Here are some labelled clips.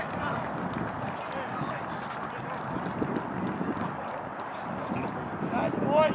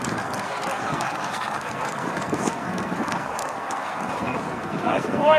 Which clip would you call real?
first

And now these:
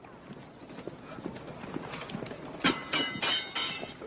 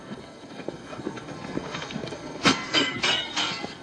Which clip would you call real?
first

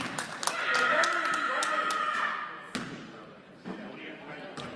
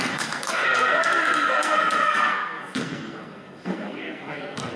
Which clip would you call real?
first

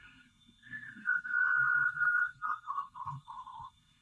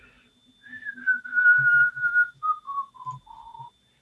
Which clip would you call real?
second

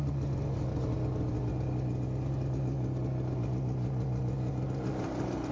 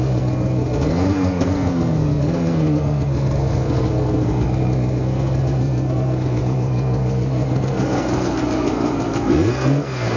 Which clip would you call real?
first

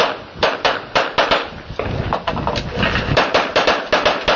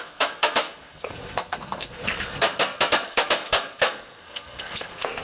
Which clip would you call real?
first